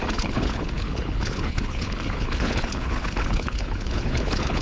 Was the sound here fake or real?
fake